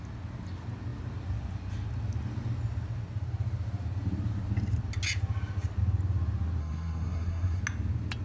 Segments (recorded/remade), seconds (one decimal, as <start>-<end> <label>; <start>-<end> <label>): 0.0-6.6 recorded; 6.6-7.6 remade; 7.6-8.2 recorded